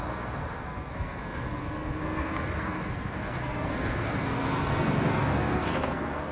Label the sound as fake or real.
fake